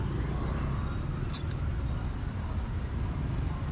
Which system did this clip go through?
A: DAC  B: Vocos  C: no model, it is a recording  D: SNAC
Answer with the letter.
C